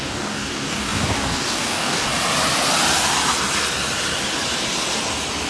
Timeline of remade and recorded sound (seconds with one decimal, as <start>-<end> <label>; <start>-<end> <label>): 0.0-2.1 remade; 2.1-5.5 recorded